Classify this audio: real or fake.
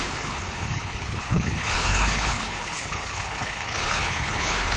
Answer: fake